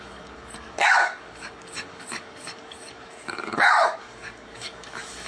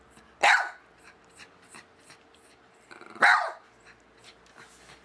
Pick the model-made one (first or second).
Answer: first